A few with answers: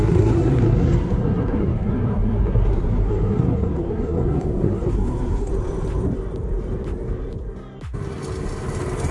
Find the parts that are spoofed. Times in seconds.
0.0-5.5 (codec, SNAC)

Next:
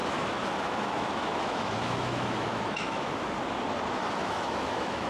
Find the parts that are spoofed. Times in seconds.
0.0-3.1 (autoencoder, DAC-VAE); 4.2-5.1

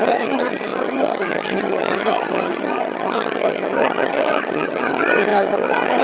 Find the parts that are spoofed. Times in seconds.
0.0-6.0 (vocoder, HiFi-GAN)

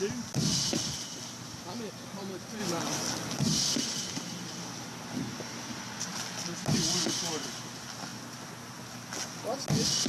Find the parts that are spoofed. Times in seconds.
none

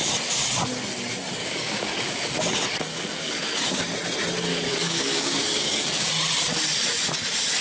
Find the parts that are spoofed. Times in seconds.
1.4-2.4 (codec, DAC); 2.9-3.8; 4.5-6.1

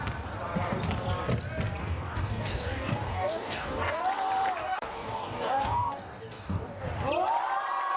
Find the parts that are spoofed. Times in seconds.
1.8-4.0 (codec, DAC); 4.6-6.9

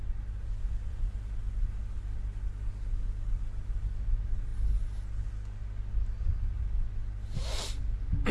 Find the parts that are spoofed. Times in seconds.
none